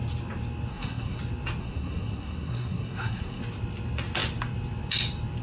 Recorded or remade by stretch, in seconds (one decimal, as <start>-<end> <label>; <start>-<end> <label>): 0.0-0.7 recorded; 0.7-1.2 remade; 1.2-1.6 recorded; 1.6-3.4 remade; 3.4-5.4 recorded